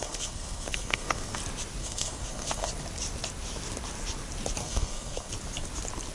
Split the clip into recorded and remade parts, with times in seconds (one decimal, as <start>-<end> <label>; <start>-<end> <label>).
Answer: 0.0-1.4 remade; 1.4-1.8 recorded; 1.8-2.7 remade; 2.7-4.6 recorded; 4.6-5.3 remade; 5.3-6.1 recorded